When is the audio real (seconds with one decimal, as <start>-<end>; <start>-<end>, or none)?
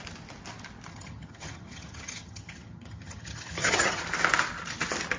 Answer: 0.0-0.9; 4.0-5.2